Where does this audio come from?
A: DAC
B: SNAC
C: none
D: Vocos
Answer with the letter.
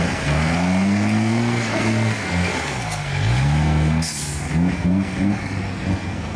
B